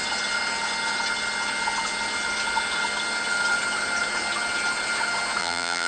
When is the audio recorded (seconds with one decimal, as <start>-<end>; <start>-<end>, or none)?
0.0-5.4